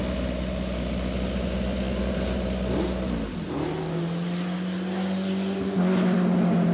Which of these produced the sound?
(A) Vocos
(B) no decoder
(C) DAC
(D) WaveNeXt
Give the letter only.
B